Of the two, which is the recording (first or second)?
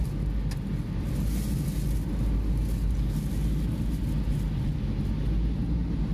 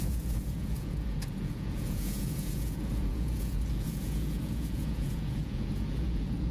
first